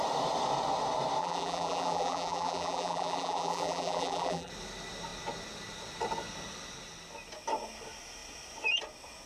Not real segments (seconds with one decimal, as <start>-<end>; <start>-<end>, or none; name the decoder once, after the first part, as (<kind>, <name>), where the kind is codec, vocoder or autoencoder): 1.2-4.5 (vocoder, BigVGAN v2)